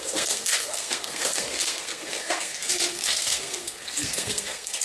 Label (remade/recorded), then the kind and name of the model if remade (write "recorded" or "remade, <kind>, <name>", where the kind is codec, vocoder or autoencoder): remade, codec, SNAC